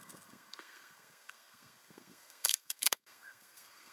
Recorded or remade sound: remade